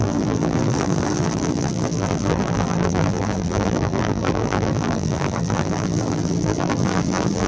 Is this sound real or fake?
fake